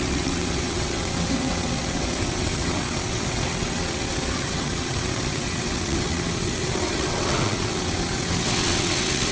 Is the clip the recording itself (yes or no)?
no